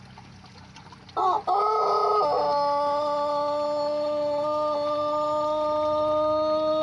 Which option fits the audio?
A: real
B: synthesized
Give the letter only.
A